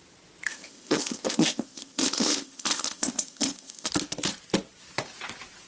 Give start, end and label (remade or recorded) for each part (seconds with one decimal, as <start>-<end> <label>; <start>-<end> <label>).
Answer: 0.0-0.5 recorded; 0.5-3.9 remade; 3.9-5.7 recorded